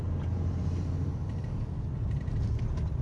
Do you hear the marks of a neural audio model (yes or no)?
yes